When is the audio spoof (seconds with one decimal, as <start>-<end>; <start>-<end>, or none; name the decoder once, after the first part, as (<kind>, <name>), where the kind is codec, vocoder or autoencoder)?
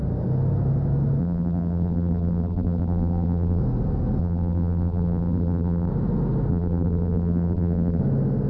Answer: 1.2-3.6 (vocoder, BigVGAN v2); 4.2-5.9; 6.5-8.0